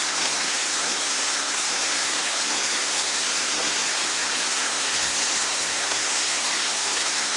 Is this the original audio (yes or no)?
no